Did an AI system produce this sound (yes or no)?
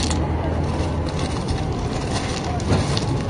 no